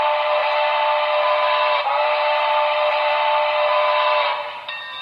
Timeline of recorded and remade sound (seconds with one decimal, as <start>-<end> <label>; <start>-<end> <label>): 0.0-5.0 recorded